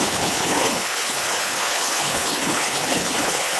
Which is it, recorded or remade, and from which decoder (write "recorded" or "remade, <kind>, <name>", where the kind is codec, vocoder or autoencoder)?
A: remade, codec, HILCodec